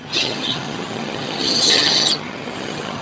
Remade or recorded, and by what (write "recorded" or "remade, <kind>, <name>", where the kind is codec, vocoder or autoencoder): remade, vocoder, HiFi-GAN